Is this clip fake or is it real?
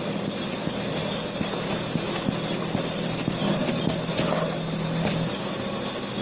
real